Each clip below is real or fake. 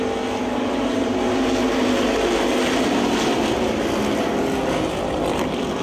real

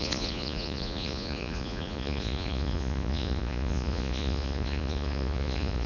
fake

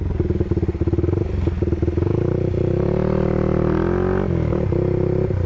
real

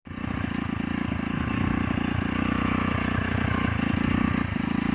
real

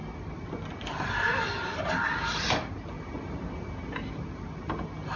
real